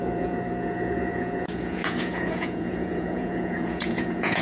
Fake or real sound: fake